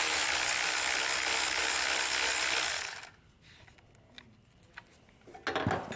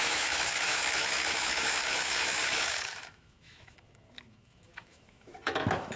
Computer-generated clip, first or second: second